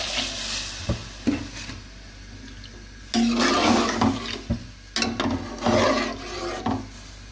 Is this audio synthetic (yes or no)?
no